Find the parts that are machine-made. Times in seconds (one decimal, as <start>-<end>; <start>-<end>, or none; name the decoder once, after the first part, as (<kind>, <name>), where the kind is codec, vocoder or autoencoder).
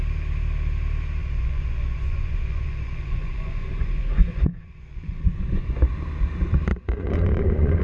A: 1.2-5.9 (vocoder, Vocos); 6.7-7.8